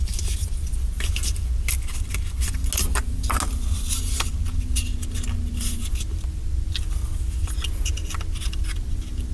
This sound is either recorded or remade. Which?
recorded